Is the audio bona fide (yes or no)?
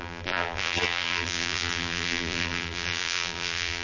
no